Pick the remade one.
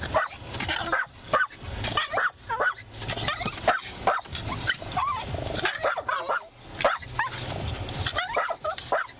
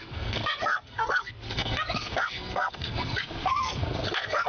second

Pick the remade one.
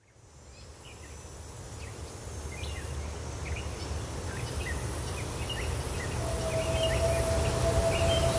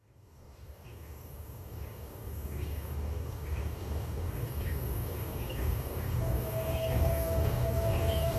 second